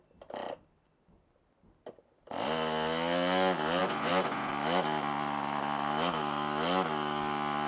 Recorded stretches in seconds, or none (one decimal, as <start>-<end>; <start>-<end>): 0.0-3.8; 4.5-7.7